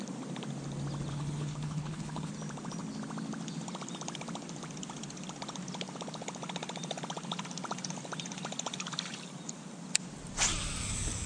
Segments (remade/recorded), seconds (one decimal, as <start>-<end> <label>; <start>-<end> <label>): 0.0-1.1 recorded; 1.1-2.3 remade; 2.3-11.3 recorded